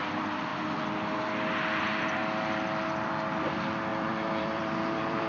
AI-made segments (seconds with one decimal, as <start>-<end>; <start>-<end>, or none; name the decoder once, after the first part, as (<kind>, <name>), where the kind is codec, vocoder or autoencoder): 0.0-0.5 (vocoder, BigVGAN v2); 3.4-5.3

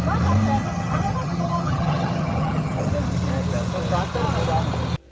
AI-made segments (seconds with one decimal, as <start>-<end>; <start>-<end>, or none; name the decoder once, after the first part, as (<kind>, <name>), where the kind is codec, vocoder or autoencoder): 0.6-2.9 (vocoder, HiFi-GAN)

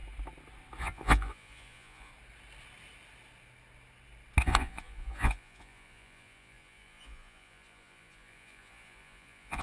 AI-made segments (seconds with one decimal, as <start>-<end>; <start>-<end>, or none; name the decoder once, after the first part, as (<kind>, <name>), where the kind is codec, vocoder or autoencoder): 0.8-2.1 (vocoder, Vocos); 4.4-9.6

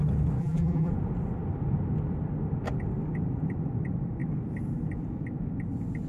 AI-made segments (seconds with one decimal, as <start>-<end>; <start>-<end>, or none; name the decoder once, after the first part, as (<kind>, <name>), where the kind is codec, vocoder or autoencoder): 0.4-0.9 (vocoder, BigVGAN v2)

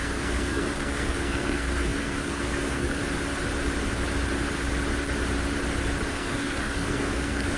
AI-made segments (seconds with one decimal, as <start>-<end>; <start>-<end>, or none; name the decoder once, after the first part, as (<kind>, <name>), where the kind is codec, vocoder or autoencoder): 0.0-3.0 (codec, SNAC); 6.1-7.6